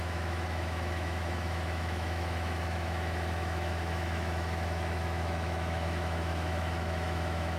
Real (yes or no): no